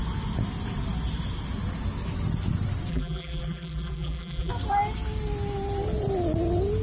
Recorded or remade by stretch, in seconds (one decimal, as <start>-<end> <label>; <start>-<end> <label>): 0.0-2.9 recorded; 2.9-4.5 remade; 4.5-6.8 recorded